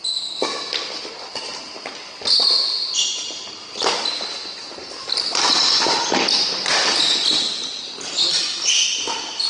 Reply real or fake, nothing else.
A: real